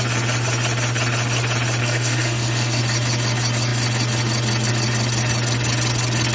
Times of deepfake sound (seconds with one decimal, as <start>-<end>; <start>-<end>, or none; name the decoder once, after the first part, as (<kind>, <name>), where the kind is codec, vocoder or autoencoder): 1.8-2.8 (codec, SNAC)